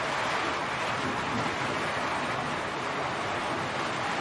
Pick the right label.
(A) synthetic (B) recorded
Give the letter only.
B